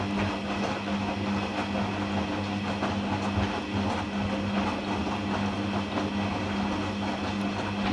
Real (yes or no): yes